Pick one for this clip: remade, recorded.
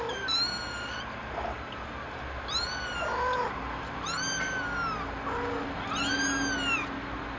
recorded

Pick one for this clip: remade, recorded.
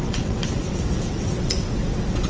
remade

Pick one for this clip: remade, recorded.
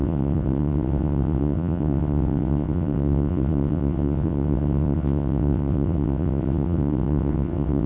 remade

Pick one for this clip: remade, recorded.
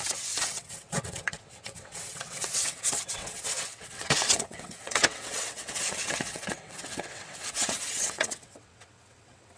remade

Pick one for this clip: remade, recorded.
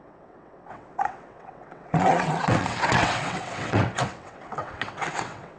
remade